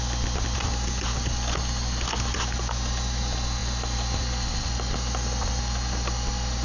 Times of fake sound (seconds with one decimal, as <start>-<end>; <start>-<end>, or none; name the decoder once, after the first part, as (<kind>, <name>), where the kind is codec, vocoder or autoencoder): none